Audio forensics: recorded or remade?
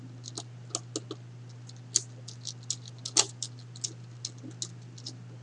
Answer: recorded